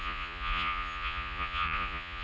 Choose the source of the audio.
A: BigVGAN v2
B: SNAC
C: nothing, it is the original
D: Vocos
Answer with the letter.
D